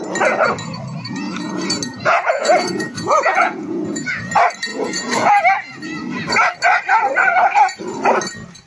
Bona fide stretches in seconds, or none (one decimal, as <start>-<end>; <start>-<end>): 0.0-1.9; 4.2-4.7; 5.4-8.7